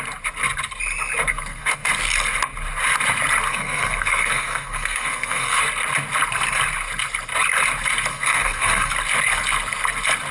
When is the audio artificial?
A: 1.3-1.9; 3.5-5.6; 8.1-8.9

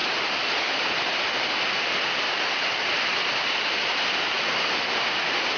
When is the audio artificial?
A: none

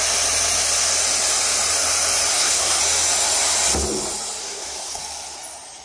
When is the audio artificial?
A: 2.3-2.8; 4.4-5.0

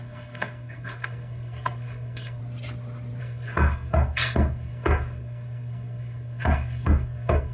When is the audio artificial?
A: 0.0-2.4; 3.2-7.5

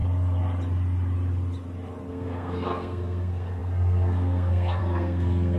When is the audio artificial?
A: 2.1-5.6

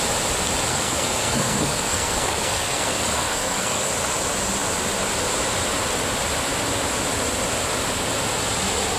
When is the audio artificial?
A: 0.7-3.9

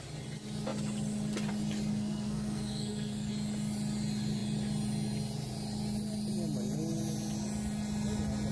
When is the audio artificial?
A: 1.9-3.3